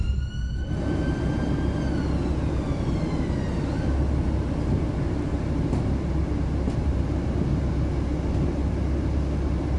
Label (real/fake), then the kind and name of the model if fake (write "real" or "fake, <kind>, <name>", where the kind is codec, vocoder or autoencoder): real